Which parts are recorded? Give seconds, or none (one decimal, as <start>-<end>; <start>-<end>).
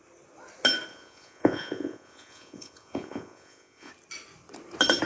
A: 0.0-0.9; 3.9-5.0